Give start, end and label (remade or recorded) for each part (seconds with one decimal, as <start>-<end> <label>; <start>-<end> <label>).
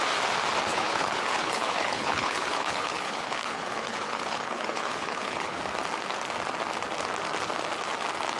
0.0-0.7 recorded; 0.7-5.6 remade; 5.6-8.4 recorded